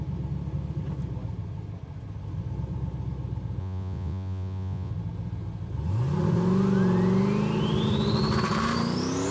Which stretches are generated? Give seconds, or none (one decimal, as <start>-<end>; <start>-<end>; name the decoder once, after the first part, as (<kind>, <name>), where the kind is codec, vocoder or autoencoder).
3.6-4.9 (vocoder, Vocos)